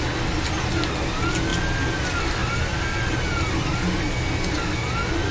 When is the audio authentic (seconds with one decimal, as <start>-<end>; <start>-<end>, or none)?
0.0-5.3